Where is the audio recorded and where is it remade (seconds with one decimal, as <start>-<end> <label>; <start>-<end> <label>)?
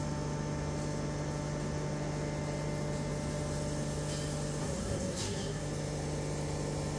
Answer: 0.0-4.6 recorded; 4.6-5.6 remade; 5.6-7.0 recorded